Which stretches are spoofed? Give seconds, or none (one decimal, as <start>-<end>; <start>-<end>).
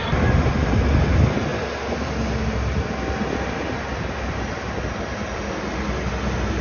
none